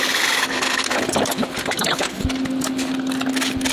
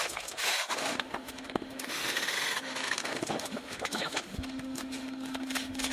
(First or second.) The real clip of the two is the first